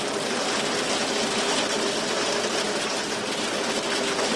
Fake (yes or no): no